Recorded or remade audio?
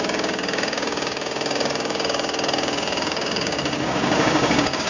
remade